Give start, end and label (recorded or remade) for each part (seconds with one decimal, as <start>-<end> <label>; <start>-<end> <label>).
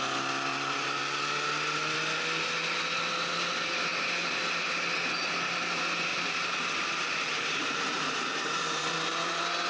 0.0-0.5 recorded; 0.5-1.0 remade; 1.0-3.9 recorded; 3.9-4.4 remade; 4.4-6.1 recorded; 6.1-9.7 remade